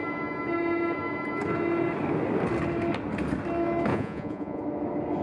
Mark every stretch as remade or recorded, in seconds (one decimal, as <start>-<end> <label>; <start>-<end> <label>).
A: 0.0-3.9 recorded; 3.9-4.6 remade; 4.6-5.2 recorded